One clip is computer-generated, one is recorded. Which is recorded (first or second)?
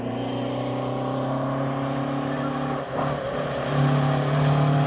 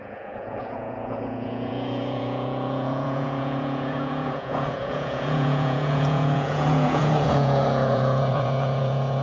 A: first